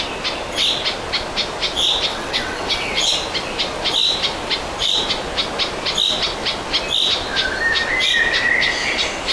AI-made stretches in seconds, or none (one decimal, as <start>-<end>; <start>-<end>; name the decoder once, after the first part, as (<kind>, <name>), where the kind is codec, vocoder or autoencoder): 2.1-3.1 (vocoder, WaveNeXt)